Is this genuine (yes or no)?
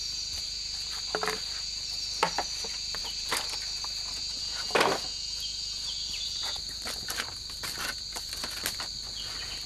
yes